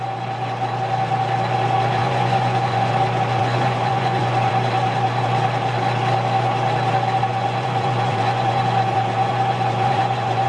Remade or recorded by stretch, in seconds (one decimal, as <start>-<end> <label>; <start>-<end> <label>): 0.0-2.0 recorded; 2.0-2.9 remade; 2.9-3.4 recorded; 3.4-4.5 remade; 4.5-7.3 recorded; 7.3-10.5 remade